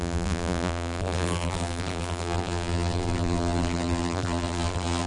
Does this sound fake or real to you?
fake